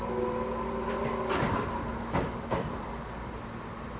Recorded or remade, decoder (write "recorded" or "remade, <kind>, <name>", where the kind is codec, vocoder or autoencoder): recorded